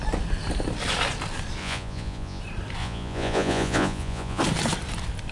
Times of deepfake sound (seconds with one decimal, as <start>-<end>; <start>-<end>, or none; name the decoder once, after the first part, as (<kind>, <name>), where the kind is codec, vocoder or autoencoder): 1.6-2.4 (vocoder, Vocos); 2.8-4.4

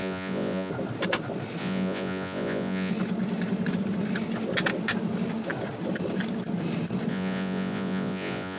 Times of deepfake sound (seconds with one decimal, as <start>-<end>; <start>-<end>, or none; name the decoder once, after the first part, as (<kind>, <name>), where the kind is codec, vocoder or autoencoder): 0.0-0.7 (vocoder, Vocos); 1.6-2.9; 7.1-8.6

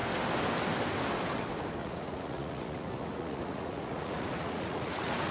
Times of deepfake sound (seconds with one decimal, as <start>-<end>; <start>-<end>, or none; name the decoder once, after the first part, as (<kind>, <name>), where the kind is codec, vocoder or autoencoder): 1.8-5.3 (vocoder, Vocos)

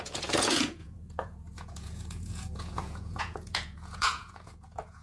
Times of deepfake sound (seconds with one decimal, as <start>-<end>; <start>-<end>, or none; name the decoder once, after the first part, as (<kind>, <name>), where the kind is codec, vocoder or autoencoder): 0.0-5.0 (vocoder, Vocos)

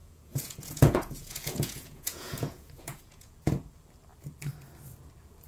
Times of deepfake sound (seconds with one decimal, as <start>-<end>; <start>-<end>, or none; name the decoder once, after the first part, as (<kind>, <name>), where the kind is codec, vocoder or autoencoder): 0.0-3.3 (vocoder, Vocos)